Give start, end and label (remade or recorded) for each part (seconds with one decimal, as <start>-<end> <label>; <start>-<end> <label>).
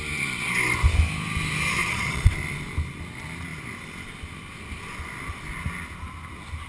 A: 0.0-1.8 recorded; 1.8-2.3 remade; 2.3-6.7 recorded